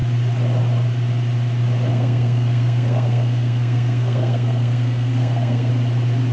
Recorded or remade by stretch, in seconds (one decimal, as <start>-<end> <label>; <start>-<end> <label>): 0.0-1.9 recorded; 1.9-5.7 remade; 5.7-6.3 recorded